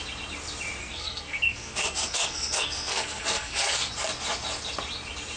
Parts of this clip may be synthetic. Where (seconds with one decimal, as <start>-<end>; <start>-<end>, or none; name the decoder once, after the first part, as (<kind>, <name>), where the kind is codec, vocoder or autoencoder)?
0.8-3.9 (codec, SNAC)